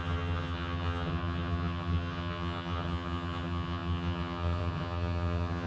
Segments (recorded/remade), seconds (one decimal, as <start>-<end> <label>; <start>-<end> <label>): 0.0-5.7 remade